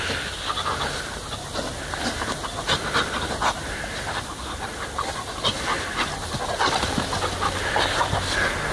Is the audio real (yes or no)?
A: yes